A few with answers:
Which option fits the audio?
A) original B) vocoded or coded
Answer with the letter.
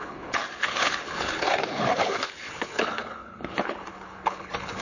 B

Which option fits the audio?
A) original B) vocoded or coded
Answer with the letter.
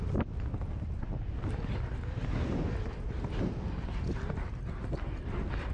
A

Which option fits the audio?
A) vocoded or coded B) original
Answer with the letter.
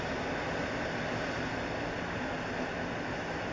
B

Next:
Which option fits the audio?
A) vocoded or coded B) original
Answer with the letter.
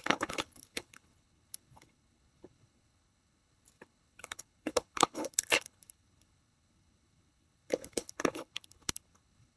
A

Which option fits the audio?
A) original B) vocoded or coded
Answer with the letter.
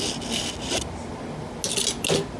A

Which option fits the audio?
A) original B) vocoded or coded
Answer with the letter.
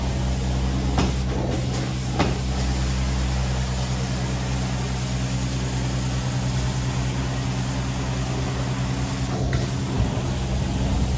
A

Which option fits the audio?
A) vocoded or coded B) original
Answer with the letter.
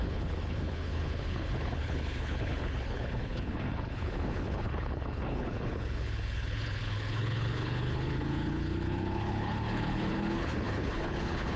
A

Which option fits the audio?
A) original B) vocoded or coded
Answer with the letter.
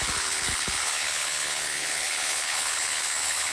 B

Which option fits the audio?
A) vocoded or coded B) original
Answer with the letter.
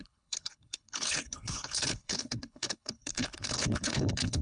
A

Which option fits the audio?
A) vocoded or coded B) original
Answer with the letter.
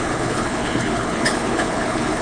A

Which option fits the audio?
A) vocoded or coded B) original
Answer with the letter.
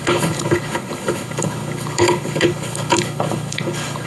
A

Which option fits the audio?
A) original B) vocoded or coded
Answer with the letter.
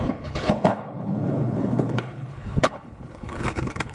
B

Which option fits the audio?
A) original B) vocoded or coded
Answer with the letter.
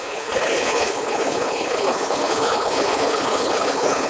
B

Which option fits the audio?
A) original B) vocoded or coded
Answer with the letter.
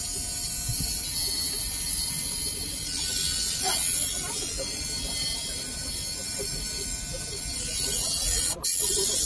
A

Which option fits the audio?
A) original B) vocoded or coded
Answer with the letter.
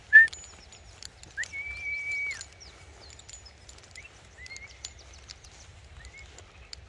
A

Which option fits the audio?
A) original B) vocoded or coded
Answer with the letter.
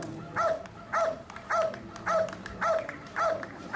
A